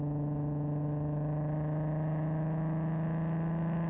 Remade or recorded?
recorded